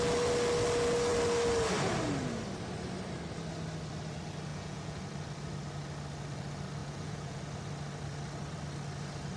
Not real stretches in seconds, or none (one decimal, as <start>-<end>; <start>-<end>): 4.5-5.0; 6.8-7.4

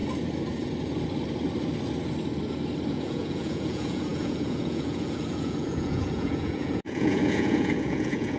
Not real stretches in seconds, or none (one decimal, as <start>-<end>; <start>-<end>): 2.9-8.4

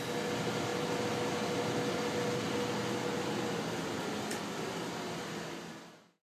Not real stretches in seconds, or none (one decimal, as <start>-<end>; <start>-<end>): none

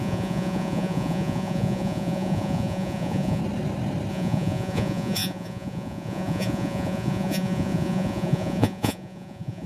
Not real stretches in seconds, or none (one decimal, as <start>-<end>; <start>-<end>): 0.0-3.4; 4.1-9.7

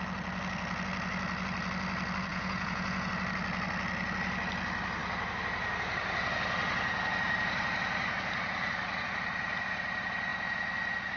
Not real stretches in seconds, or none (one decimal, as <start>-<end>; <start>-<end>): 2.3-3.1

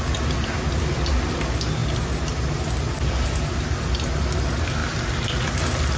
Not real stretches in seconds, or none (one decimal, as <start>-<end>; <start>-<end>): none